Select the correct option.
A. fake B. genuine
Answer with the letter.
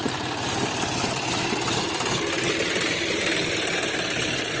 B